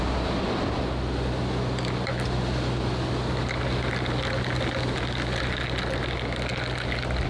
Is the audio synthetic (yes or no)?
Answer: no